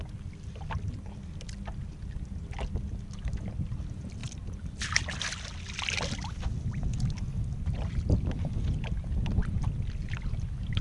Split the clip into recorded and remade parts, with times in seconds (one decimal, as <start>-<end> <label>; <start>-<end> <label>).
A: 0.0-4.2 recorded; 4.2-5.1 remade; 5.1-10.8 recorded